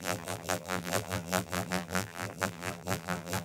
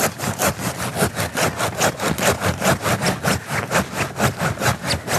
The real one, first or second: second